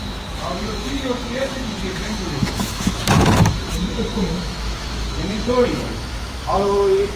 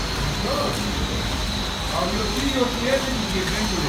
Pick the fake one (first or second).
first